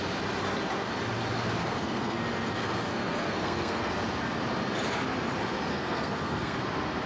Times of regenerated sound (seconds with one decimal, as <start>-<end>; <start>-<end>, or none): 1.6-3.9; 5.7-6.6